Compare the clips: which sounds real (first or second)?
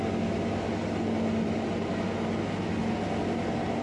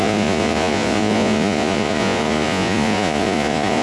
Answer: first